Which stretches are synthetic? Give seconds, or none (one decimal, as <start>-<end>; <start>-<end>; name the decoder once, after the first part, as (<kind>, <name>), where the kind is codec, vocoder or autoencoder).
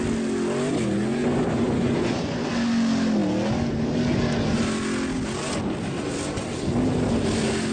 1.2-2.5 (vocoder, Vocos)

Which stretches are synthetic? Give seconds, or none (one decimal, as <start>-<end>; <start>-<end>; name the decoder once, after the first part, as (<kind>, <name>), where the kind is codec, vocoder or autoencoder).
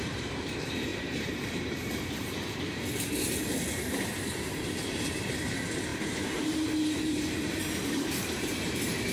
0.0-9.1 (vocoder, BigVGAN v2)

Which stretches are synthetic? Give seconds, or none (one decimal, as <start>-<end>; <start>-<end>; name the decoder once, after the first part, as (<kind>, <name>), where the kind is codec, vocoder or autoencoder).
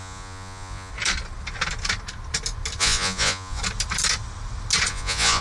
0.0-0.9 (vocoder, Vocos); 2.8-3.6; 4.9-5.4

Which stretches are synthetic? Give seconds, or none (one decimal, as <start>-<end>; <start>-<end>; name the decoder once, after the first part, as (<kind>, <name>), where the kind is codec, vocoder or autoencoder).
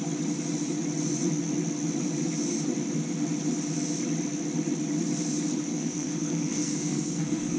5.7-7.6 (codec, SNAC)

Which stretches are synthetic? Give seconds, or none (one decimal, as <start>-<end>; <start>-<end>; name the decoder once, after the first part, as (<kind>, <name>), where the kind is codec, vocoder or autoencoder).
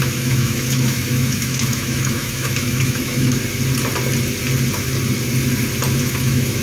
0.0-3.4 (autoencoder, DAC-VAE); 6.0-6.6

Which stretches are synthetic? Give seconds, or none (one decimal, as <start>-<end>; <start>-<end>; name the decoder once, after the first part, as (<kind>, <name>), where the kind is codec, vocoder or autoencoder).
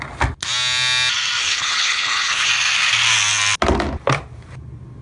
1.4-2.5 (codec, HILCodec)